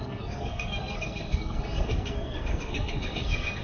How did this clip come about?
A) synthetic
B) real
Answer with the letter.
A